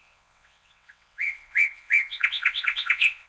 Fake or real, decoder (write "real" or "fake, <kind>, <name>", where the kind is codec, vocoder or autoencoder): fake, vocoder, WaveNeXt